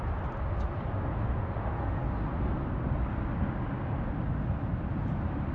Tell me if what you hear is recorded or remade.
recorded